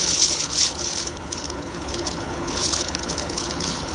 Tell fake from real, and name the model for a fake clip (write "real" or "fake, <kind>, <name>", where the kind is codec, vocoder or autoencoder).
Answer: fake, codec, HILCodec